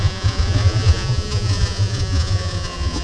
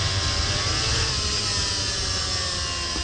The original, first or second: second